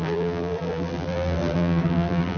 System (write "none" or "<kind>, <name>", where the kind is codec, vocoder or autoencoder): vocoder, BigVGAN v2